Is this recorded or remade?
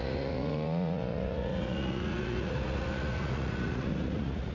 remade